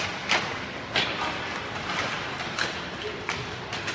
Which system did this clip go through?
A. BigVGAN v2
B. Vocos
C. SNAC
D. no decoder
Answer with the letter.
D